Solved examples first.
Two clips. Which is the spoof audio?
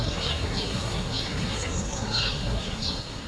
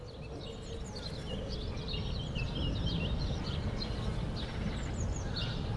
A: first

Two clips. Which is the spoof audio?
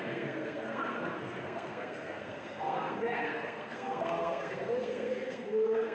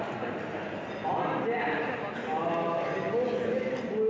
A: first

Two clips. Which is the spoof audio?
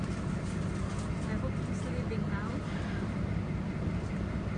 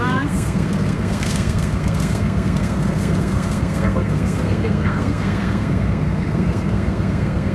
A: second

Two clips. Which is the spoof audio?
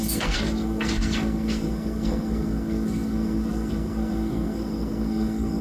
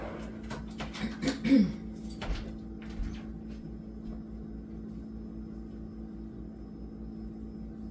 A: first